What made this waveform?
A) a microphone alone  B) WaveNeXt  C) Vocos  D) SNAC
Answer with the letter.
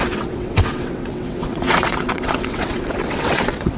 B